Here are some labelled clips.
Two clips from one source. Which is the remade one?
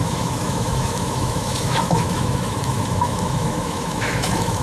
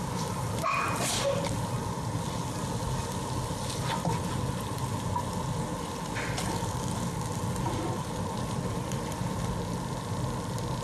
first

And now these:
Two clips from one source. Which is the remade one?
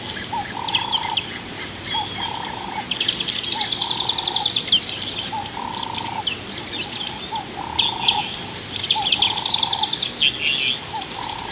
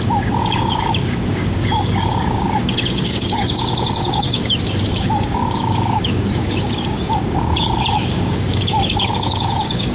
second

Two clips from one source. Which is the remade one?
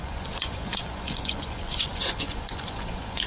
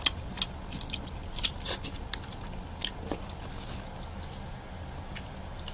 first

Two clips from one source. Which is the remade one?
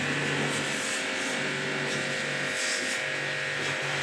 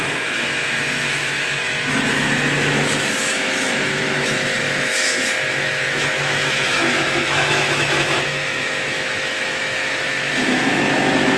second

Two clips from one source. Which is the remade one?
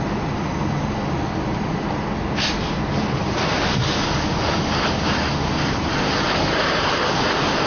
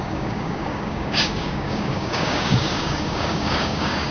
second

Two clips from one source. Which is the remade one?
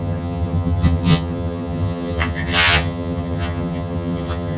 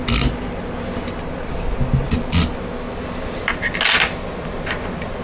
first